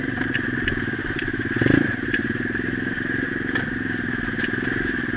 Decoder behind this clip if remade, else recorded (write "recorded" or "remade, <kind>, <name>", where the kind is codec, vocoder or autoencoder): recorded